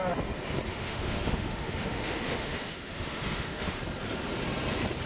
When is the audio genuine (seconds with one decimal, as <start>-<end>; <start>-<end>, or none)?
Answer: 0.0-0.7; 3.8-5.1